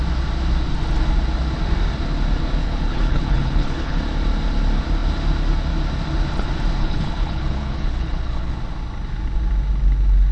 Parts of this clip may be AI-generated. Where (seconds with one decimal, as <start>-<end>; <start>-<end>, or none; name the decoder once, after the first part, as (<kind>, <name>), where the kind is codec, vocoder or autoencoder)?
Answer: 2.6-4.0 (codec, HILCodec); 6.8-8.6